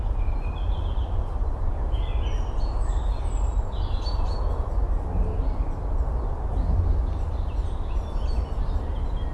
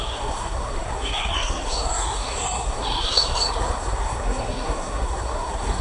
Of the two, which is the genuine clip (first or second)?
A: first